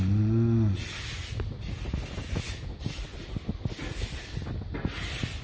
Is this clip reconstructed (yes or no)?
no